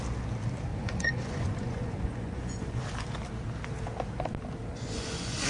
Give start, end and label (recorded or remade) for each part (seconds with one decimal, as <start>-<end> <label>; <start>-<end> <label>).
0.0-0.7 recorded; 0.7-2.8 remade; 2.8-4.7 recorded; 4.7-5.5 remade